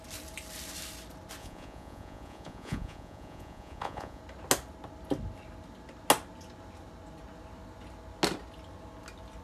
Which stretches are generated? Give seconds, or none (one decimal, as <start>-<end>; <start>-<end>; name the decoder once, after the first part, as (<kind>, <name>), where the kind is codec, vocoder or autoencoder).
1.4-4.2 (vocoder, Vocos)